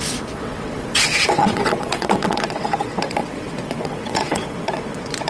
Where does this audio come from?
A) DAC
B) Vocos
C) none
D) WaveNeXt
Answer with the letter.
D